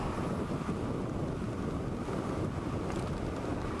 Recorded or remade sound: recorded